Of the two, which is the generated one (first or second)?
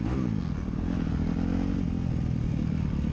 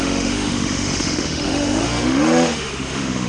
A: second